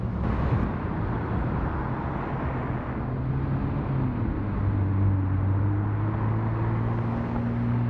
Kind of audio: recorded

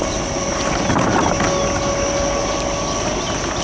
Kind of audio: recorded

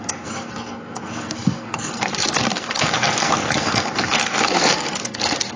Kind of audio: remade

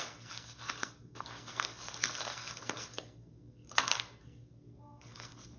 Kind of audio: remade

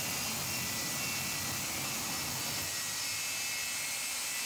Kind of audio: recorded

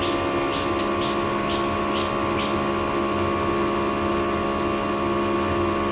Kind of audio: recorded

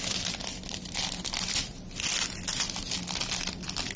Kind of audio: recorded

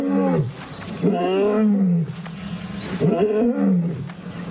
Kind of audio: recorded